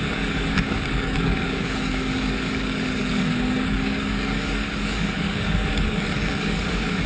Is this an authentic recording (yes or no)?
no